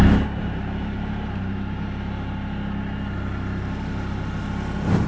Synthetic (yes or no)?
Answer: no